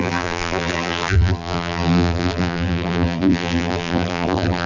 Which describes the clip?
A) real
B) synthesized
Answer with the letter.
B